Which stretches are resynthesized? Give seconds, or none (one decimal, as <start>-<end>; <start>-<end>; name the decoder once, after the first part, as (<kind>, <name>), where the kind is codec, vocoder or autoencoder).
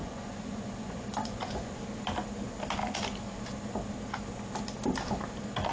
0.0-1.8 (vocoder, Vocos)